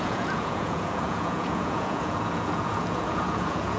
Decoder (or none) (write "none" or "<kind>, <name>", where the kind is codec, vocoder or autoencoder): vocoder, Vocos